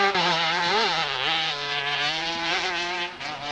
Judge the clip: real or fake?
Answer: fake